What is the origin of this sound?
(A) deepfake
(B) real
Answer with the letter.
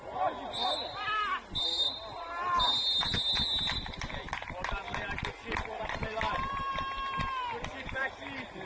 B